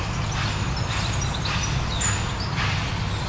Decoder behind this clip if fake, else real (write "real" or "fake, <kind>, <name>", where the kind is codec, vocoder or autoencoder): real